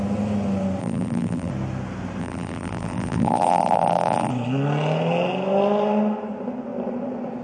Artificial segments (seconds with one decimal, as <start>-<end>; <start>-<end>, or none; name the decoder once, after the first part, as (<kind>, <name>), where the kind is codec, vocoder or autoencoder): 0.8-1.5 (vocoder, BigVGAN v2); 2.2-4.3

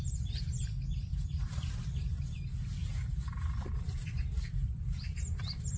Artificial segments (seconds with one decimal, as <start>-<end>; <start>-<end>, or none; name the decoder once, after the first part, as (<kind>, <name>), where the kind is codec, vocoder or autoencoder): 1.1-1.7 (vocoder, BigVGAN v2); 2.8-5.8

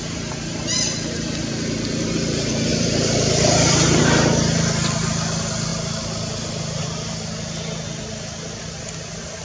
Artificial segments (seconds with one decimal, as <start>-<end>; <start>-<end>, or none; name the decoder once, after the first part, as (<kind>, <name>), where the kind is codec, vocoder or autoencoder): 2.7-4.0 (vocoder, BigVGAN v2)

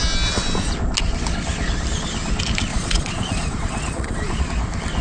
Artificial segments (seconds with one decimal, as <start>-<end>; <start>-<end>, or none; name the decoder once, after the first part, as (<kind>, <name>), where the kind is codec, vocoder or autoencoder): 2.7-4.4 (vocoder, Vocos)

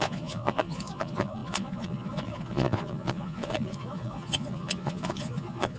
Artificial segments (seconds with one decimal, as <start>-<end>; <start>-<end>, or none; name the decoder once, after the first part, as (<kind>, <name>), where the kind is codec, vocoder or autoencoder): 0.0-5.8 (vocoder, Vocos)